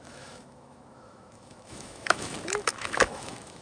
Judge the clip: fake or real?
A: fake